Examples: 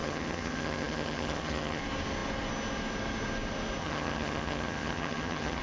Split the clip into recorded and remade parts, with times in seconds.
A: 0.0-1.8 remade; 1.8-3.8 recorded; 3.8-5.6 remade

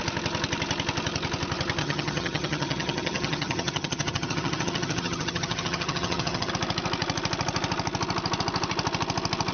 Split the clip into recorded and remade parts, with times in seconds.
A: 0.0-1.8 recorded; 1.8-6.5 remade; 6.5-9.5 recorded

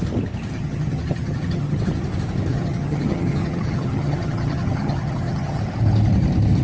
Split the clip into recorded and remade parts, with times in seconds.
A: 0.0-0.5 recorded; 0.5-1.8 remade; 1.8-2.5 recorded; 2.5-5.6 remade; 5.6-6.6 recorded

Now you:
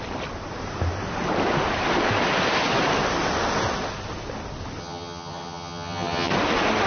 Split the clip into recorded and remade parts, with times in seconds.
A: 0.0-4.8 recorded; 4.8-6.3 remade; 6.3-6.9 recorded